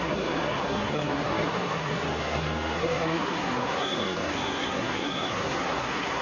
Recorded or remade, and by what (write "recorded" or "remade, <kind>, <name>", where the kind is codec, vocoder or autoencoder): remade, codec, SNAC